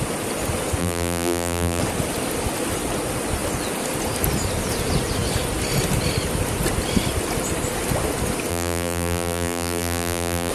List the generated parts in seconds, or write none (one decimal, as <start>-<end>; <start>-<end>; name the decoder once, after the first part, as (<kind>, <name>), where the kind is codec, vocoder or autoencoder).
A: 0.8-1.8 (vocoder, BigVGAN v2); 8.5-10.5